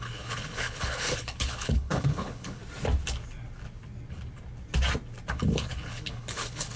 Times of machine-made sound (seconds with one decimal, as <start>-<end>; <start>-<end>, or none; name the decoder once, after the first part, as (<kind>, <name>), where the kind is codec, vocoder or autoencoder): 0.0-2.6 (codec, HILCodec); 5.3-6.8